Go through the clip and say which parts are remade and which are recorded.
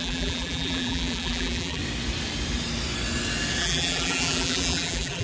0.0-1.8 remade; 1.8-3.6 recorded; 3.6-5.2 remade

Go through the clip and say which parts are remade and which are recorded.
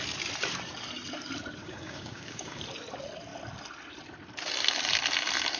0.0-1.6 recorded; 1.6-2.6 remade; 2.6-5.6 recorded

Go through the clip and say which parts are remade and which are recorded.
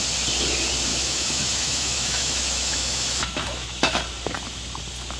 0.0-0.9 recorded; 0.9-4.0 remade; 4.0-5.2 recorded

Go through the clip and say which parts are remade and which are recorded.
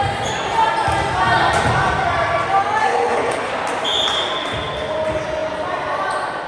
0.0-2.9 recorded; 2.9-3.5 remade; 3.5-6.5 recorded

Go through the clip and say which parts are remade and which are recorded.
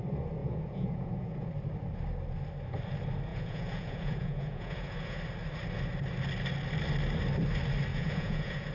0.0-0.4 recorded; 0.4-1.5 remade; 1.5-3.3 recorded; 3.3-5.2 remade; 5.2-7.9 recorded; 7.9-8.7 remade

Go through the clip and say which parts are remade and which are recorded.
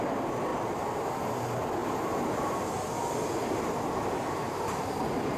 0.0-5.4 recorded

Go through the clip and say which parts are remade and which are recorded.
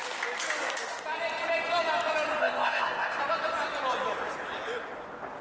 0.0-2.4 recorded; 2.4-3.2 remade; 3.2-5.4 recorded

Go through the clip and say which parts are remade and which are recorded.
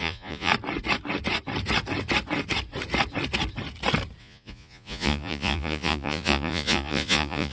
0.0-0.5 remade; 0.5-4.2 recorded; 4.2-7.5 remade